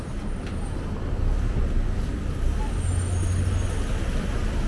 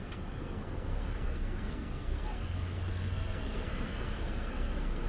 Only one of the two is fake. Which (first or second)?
second